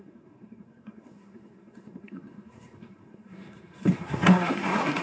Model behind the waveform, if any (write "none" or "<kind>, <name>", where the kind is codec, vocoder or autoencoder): codec, SNAC